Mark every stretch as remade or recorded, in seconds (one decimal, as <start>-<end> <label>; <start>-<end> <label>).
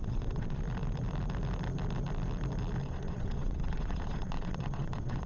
0.0-0.6 remade; 0.6-2.8 recorded; 2.8-5.3 remade